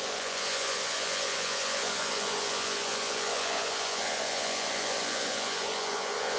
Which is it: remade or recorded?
remade